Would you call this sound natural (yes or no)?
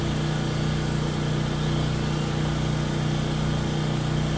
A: yes